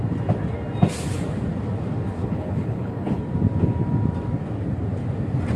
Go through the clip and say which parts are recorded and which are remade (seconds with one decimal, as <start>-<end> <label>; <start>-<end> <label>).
0.0-2.2 recorded; 2.2-3.2 remade; 3.2-5.6 recorded